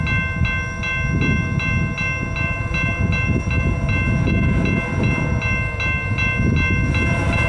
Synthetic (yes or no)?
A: no